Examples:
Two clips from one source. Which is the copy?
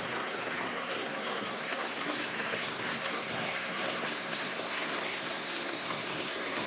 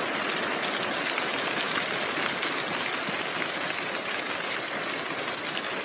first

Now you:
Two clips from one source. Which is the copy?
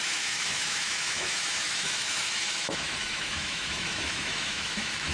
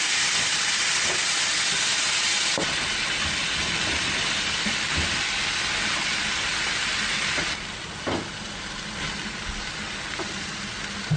first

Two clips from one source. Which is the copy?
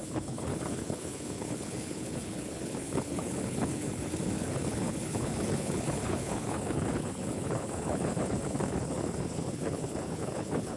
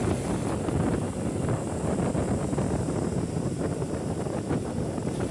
first